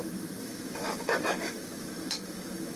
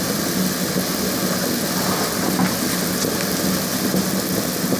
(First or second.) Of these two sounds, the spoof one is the first